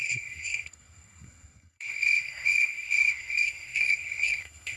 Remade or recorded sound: remade